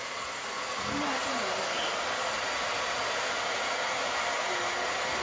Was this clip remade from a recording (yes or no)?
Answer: no